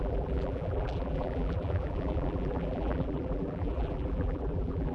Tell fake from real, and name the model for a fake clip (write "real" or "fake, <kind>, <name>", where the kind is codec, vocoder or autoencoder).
fake, vocoder, BigVGAN v2